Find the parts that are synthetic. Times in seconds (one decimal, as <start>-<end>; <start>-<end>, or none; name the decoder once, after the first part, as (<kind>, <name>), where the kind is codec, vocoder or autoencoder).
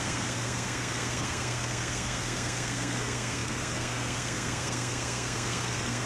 0.0-6.1 (codec, SNAC)